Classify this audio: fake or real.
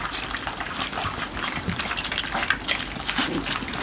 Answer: real